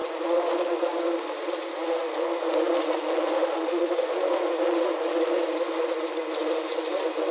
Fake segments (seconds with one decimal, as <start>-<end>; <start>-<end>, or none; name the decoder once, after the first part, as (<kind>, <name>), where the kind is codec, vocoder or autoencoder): 3.3-4.1 (autoencoder, DAC-VAE)